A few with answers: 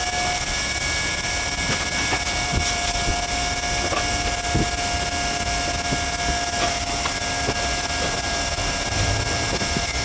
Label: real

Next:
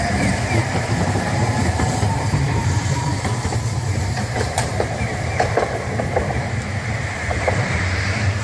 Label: fake